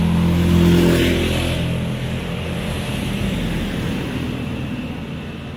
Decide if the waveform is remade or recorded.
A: recorded